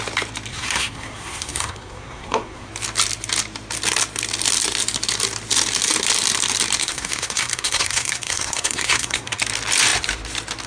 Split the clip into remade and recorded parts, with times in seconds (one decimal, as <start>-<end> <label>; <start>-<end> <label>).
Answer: 0.0-0.5 recorded; 0.5-2.7 remade; 2.7-6.8 recorded; 6.8-9.4 remade; 9.4-10.7 recorded